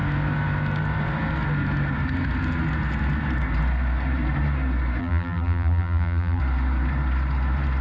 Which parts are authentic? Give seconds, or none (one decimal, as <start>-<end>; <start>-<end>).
0.0-5.0; 6.4-7.8